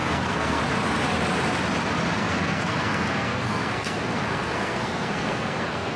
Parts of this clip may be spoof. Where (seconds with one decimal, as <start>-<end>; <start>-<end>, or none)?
0.0-0.6; 2.2-6.0